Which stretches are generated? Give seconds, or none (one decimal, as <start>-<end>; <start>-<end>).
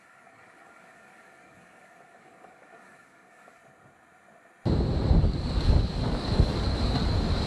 0.0-3.6; 5.2-7.5